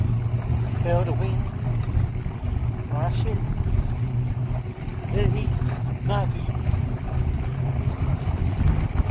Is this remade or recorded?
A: recorded